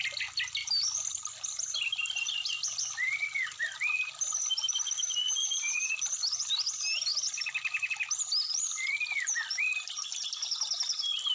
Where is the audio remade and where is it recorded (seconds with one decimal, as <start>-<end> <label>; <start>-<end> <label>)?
0.0-11.3 recorded